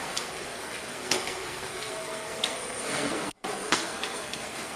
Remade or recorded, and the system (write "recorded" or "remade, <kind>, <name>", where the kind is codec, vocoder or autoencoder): remade, codec, SNAC